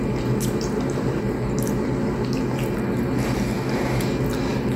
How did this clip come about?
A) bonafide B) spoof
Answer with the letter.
A